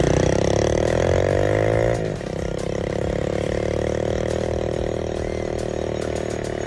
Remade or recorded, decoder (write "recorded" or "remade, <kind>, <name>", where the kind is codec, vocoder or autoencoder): recorded